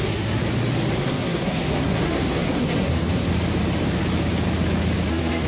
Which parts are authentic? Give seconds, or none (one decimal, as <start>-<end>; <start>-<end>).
0.4-1.0; 3.3-5.1